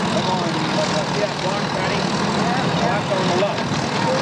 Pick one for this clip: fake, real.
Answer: real